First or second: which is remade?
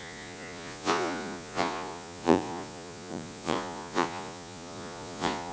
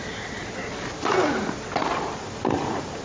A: first